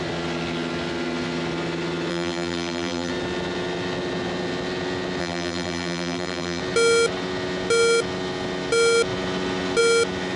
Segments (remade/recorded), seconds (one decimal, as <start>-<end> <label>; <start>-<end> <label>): 0.0-2.1 recorded; 2.1-3.1 remade; 3.1-5.2 recorded; 5.2-6.6 remade; 6.6-10.4 recorded